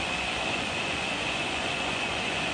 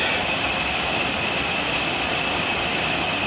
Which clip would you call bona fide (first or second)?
second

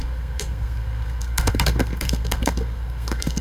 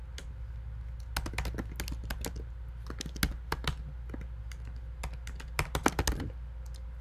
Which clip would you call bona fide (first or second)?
second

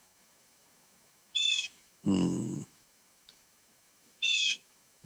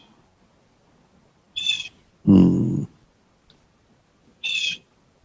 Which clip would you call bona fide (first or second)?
second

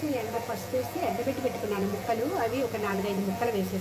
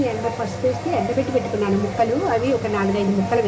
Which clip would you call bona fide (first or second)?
second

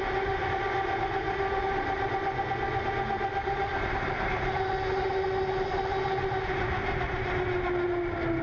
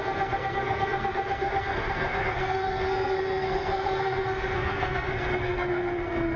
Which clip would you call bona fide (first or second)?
first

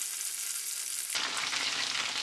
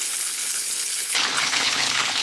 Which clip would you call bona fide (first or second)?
first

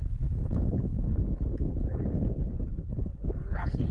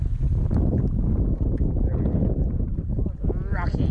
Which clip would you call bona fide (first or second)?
second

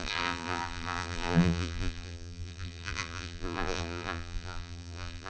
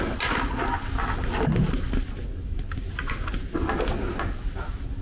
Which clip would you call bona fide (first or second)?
second